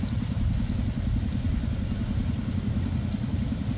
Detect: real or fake real